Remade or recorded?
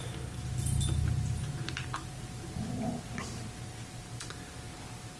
recorded